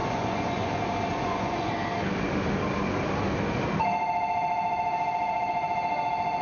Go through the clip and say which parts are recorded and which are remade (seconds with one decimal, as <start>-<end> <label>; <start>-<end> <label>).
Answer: 0.0-0.7 remade; 0.7-1.1 recorded; 1.1-1.7 remade; 1.7-6.4 recorded